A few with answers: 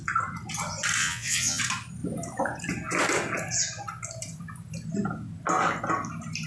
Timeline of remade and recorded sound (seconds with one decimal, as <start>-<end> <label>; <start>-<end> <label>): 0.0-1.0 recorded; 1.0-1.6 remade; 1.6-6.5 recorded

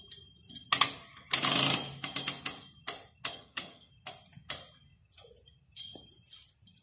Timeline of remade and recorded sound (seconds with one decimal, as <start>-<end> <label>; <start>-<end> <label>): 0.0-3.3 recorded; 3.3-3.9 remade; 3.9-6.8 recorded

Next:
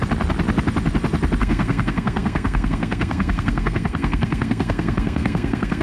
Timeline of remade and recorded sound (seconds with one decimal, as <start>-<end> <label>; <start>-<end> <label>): 0.0-1.4 recorded; 1.4-5.8 remade

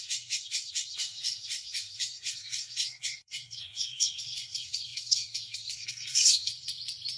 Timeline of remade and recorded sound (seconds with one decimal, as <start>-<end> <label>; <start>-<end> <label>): 0.0-6.5 remade; 6.5-7.2 recorded

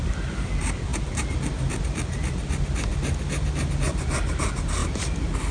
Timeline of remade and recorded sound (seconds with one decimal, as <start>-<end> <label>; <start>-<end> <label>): 0.0-5.5 recorded

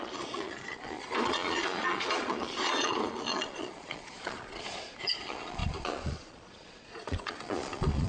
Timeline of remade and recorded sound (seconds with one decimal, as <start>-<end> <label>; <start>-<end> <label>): 0.0-8.1 remade

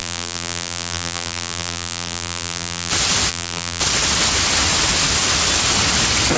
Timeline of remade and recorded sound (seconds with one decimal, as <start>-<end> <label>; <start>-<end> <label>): 0.0-2.9 remade; 2.9-3.3 recorded; 3.3-3.8 remade; 3.8-6.4 recorded

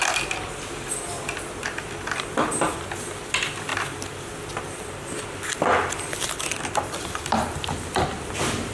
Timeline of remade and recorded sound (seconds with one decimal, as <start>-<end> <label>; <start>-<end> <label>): 0.0-8.7 recorded